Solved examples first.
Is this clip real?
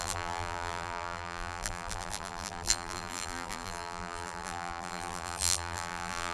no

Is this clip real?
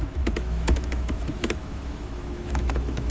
no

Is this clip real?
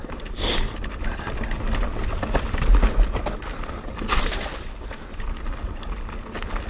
yes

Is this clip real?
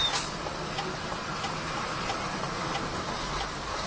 yes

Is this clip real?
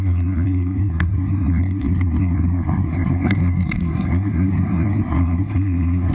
no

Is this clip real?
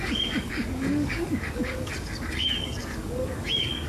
no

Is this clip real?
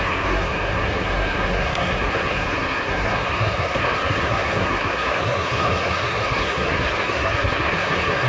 no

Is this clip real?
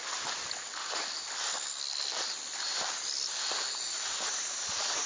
yes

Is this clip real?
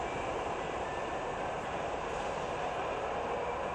yes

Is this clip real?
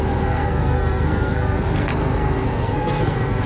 no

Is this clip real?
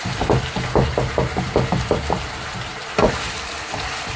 yes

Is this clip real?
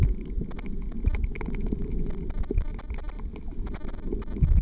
yes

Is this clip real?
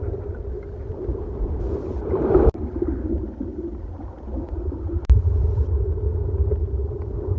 no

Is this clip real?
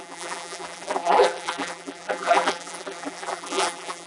no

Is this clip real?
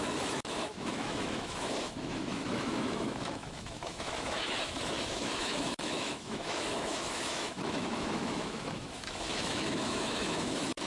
no